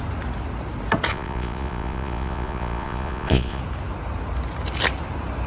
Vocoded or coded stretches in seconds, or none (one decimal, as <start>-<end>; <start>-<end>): 1.1-3.6